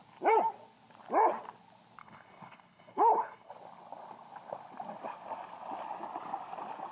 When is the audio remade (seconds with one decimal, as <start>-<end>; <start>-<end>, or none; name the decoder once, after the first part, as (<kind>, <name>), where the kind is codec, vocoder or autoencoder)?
2.0-3.5 (codec, HILCodec)